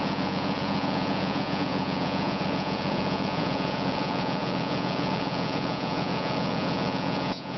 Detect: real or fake fake